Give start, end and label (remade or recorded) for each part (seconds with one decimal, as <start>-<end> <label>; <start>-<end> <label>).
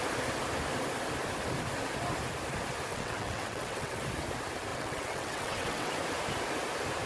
0.0-2.9 recorded; 2.9-4.0 remade; 4.0-4.7 recorded; 4.7-5.9 remade; 5.9-7.1 recorded